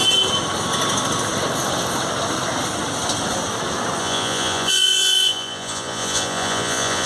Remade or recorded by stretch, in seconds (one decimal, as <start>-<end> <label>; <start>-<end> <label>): 0.0-4.0 recorded; 4.0-7.1 remade